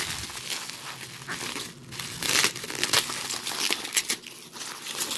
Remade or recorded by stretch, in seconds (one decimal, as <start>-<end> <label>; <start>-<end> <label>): 0.0-5.2 recorded